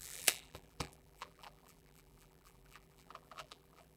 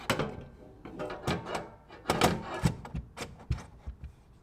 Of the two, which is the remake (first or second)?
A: first